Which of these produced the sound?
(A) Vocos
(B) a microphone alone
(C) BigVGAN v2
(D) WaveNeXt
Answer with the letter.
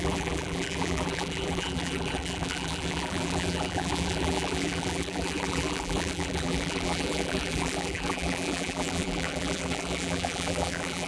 C